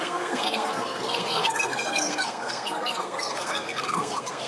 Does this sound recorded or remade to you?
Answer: remade